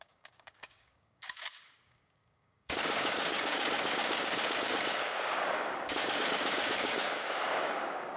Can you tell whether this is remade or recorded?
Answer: remade